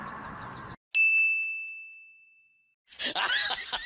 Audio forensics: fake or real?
real